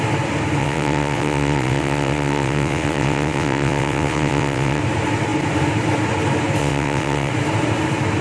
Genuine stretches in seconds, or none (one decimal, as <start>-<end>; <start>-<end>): 0.0-0.6; 4.8-6.6; 7.3-8.2